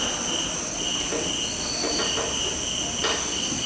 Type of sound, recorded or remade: recorded